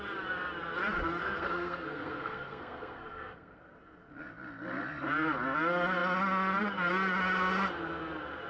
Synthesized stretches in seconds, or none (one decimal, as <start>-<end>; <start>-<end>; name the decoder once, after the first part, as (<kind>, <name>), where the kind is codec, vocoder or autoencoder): 1.2-3.6 (codec, SNAC)